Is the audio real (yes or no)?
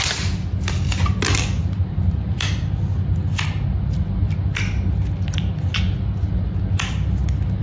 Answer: yes